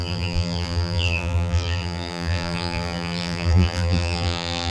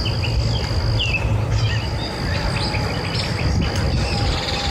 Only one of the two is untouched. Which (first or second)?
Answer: second